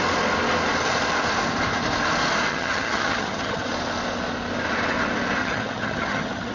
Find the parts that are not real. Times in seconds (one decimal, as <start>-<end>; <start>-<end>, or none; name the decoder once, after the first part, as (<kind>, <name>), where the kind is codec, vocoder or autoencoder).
2.5-3.7 (vocoder, HiFi-GAN); 5.4-6.5

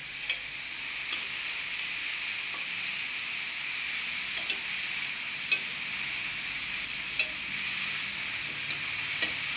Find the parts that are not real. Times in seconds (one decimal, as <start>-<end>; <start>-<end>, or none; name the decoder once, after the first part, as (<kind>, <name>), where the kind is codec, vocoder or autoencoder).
none

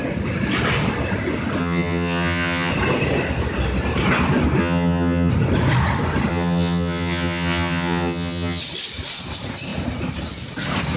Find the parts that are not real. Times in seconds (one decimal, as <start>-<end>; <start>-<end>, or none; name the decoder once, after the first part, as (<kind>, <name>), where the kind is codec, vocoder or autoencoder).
1.6-2.7 (vocoder, HiFi-GAN); 4.6-5.3; 6.3-8.6

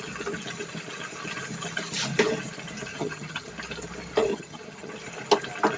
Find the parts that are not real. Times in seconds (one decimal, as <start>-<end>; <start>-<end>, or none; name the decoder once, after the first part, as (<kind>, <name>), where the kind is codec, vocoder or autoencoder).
2.9-3.5 (vocoder, HiFi-GAN); 4.3-4.9

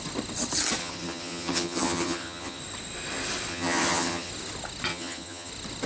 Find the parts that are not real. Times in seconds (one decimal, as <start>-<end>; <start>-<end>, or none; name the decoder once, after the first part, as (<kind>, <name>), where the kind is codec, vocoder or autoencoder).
0.8-2.6 (vocoder, HiFi-GAN); 3.5-4.3; 4.9-5.5

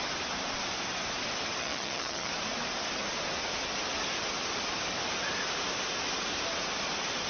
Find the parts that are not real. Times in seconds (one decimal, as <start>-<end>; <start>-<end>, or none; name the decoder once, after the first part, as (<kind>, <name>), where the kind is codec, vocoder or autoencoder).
1.6-2.3 (vocoder, HiFi-GAN)

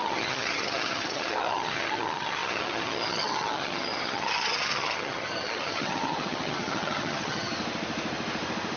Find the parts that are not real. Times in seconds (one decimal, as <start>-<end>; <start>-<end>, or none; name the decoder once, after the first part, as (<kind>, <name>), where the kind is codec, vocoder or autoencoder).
0.0-7.5 (vocoder, HiFi-GAN)